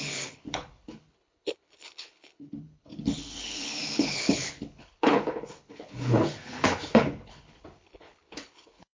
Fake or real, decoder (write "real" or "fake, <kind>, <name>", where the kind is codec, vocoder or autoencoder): fake, codec, HILCodec